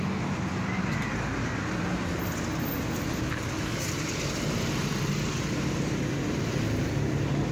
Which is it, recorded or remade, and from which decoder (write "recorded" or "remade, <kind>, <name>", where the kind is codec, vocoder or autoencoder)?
recorded